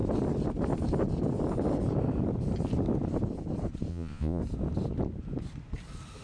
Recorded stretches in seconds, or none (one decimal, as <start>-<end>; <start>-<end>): 0.0-3.9; 4.4-6.2